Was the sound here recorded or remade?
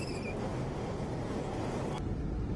recorded